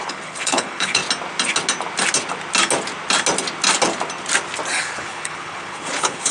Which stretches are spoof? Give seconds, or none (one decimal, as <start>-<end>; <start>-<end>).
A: 0.0-1.0; 4.8-6.3